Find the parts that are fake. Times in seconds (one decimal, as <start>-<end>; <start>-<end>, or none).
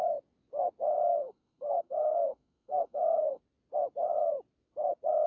1.1-3.4